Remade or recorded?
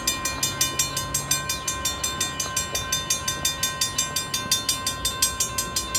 recorded